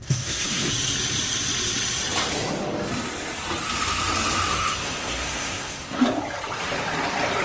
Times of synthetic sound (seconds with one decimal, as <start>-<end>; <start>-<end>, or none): 0.0-0.7; 4.5-6.0